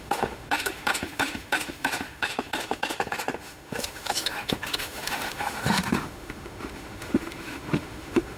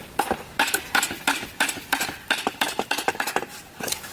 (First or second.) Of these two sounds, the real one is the second